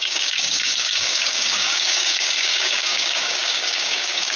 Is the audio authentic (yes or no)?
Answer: no